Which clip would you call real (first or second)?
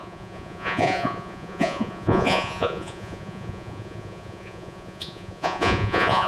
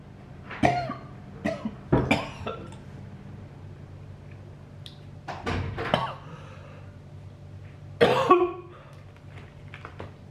second